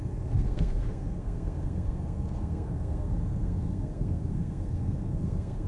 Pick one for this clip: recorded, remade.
remade